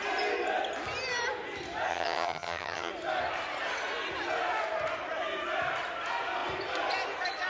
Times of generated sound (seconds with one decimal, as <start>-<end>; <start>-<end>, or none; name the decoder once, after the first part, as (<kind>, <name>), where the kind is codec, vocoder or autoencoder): 1.9-2.9 (vocoder, HiFi-GAN)